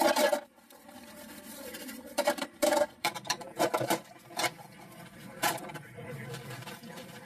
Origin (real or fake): fake